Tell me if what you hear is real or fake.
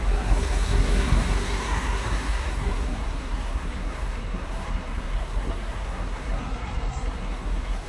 fake